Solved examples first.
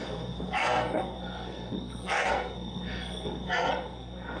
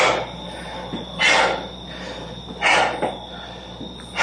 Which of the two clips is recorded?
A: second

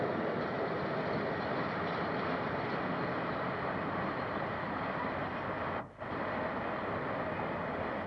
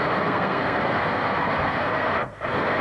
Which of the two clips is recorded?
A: first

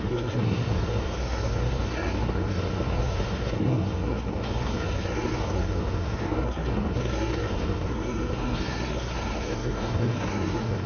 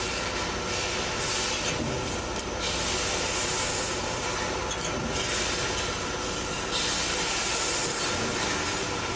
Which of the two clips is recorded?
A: second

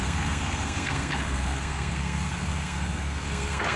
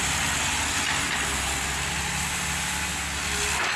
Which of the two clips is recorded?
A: second